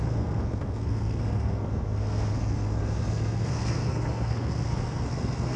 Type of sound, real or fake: fake